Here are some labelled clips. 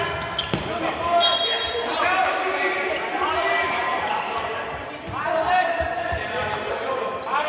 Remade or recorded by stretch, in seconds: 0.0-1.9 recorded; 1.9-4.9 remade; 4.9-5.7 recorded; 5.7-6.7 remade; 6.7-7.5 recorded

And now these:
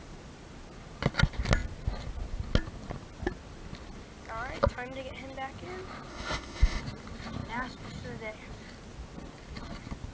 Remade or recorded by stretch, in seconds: 0.0-6.1 recorded; 6.1-6.8 remade; 6.8-10.1 recorded

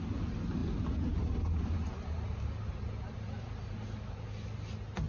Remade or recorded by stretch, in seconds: 0.0-5.1 recorded

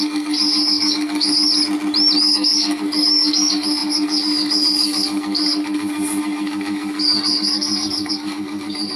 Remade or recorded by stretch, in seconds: 0.0-1.5 remade; 1.5-2.2 recorded; 2.2-9.0 remade

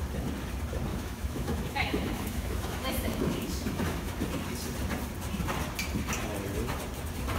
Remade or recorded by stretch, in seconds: 0.0-0.9 recorded; 0.9-4.2 remade; 4.2-7.4 recorded

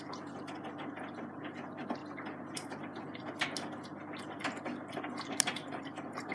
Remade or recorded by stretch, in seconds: 0.0-6.3 recorded

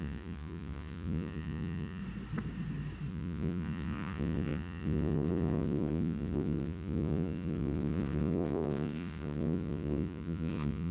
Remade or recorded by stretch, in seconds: 0.0-2.0 remade; 2.0-3.1 recorded; 3.1-10.9 remade